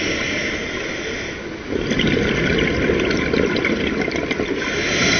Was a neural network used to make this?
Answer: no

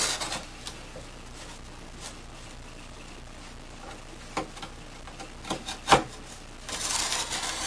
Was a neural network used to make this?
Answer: no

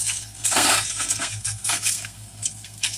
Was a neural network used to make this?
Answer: yes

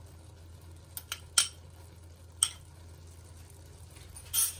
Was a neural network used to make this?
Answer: no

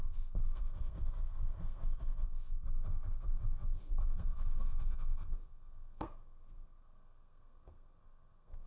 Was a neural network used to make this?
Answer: yes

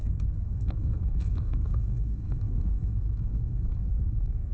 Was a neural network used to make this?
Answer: yes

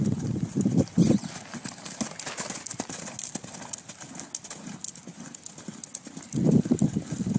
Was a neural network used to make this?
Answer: no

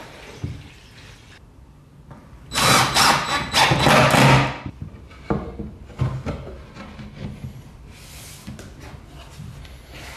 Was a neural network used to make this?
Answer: no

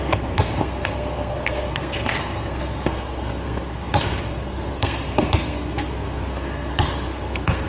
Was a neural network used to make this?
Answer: yes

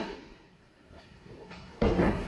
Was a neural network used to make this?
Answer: yes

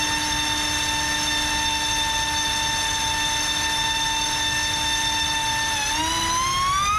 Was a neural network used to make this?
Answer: no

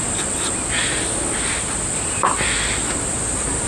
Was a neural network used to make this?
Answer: no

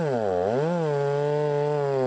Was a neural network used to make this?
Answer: no